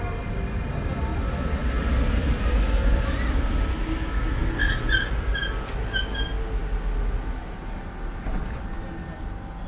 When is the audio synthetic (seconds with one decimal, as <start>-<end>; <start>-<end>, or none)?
none